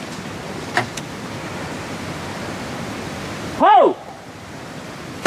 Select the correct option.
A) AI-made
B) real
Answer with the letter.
A